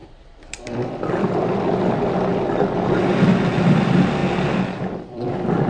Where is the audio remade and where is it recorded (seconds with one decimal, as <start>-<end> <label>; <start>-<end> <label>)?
0.0-2.3 remade; 2.3-2.8 recorded; 2.8-4.2 remade; 4.2-5.0 recorded; 5.0-5.7 remade